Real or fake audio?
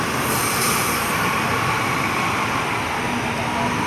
fake